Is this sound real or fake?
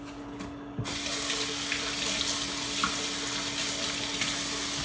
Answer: real